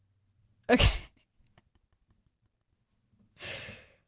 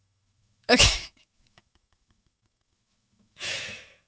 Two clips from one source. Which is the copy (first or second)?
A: second